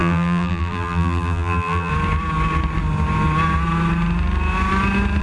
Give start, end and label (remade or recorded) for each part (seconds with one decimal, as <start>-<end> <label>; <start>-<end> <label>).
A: 0.0-1.9 remade; 1.9-5.2 recorded